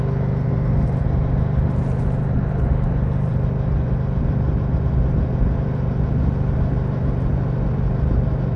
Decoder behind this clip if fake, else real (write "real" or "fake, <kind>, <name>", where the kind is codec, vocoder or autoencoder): real